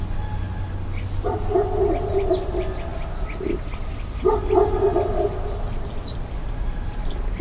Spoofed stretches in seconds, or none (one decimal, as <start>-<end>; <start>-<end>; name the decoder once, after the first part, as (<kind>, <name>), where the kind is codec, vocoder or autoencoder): none